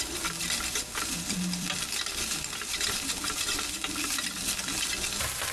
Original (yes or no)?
no